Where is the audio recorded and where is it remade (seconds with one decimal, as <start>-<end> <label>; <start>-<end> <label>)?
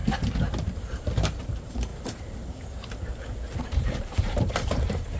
0.0-1.4 recorded; 1.4-1.9 remade; 1.9-3.6 recorded; 3.6-5.2 remade